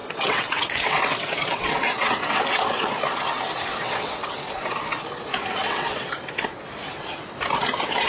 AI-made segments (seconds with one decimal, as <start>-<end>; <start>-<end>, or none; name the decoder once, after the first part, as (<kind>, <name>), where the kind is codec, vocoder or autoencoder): 0.0-2.9 (vocoder, WaveNeXt); 3.8-4.3; 5.6-6.1